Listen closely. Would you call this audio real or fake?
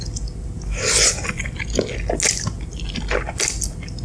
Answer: real